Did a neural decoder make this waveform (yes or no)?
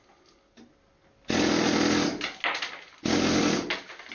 no